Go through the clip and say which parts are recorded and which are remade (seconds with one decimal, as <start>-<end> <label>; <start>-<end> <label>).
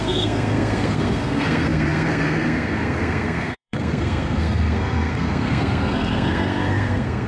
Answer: 0.0-7.3 remade